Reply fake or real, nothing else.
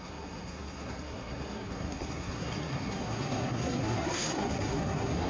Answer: fake